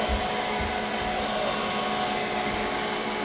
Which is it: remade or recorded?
recorded